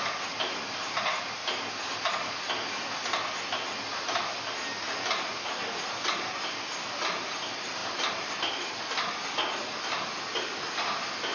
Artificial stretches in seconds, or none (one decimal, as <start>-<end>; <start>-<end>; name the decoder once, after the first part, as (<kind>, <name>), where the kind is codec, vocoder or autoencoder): none